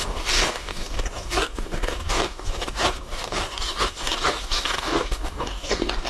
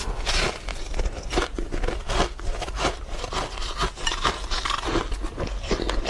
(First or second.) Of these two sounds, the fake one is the first